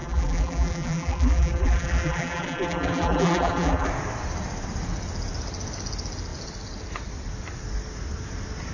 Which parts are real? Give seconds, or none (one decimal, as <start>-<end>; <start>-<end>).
3.9-8.7